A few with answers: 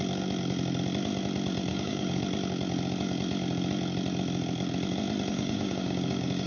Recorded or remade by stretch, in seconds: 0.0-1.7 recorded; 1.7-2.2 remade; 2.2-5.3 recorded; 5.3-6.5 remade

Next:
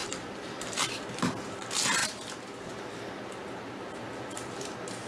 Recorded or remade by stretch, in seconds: 0.0-1.0 remade; 1.0-2.0 recorded; 2.0-2.7 remade; 2.7-5.1 recorded